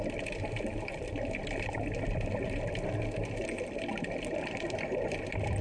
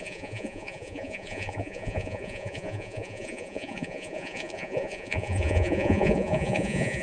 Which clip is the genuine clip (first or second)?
first